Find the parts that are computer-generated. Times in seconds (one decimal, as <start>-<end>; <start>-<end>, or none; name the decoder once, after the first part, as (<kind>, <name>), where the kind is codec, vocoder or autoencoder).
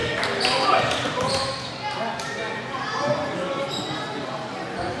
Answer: none